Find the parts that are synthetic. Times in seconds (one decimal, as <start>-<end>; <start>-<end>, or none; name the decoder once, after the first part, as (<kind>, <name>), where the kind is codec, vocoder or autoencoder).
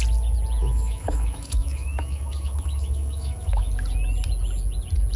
0.6-3.7 (autoencoder, DAC-VAE)